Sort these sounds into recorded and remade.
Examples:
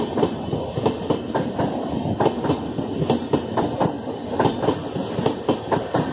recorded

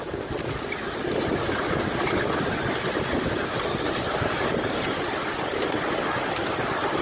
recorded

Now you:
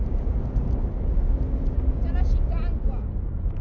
recorded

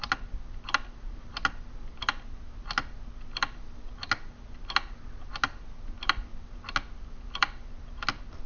recorded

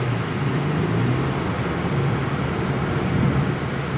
recorded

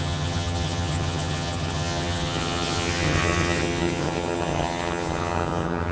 remade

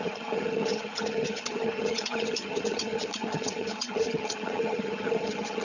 remade